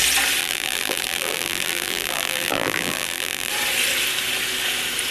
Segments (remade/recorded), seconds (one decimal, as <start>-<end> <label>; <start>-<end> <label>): 0.0-0.4 recorded; 0.4-3.5 remade; 3.5-5.1 recorded